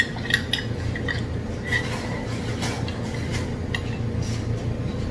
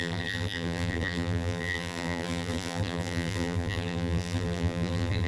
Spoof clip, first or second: second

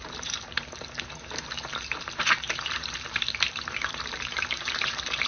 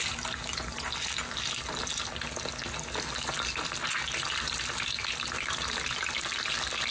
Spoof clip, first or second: first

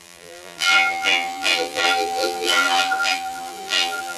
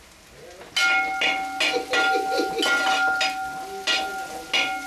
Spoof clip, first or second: first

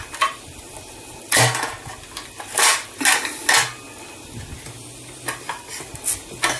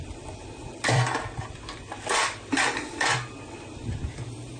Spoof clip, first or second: second